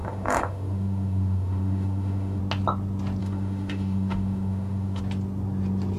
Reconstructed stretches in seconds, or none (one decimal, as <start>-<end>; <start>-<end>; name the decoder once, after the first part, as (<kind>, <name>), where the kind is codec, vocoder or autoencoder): 0.0-2.4 (autoencoder, DAC-VAE); 3.2-5.0